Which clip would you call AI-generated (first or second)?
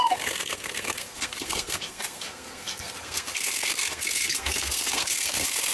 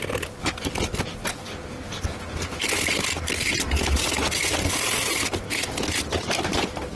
first